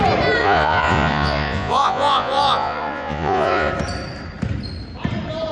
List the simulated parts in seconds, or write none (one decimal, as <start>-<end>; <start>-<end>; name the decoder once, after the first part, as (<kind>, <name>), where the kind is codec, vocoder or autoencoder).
0.4-3.7 (vocoder, Vocos)